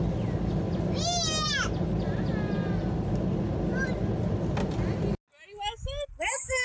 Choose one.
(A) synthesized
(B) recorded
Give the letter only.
B